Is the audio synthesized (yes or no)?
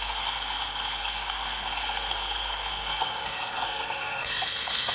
yes